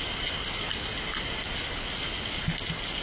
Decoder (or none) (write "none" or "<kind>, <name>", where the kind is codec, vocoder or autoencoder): none